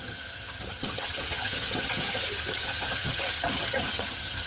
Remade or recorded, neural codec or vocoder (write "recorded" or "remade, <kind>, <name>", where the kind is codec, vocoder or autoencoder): remade, vocoder, HiFi-GAN